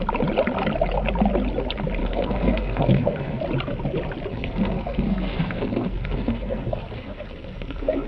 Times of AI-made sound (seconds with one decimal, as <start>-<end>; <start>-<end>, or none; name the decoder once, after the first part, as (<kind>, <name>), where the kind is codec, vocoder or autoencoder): 2.0-3.4 (codec, SNAC); 4.3-8.1